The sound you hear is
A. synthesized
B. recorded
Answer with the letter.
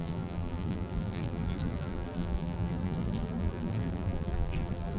A